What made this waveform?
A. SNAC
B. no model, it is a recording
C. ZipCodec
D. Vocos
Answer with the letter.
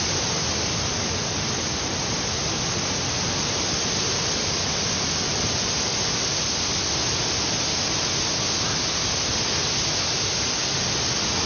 B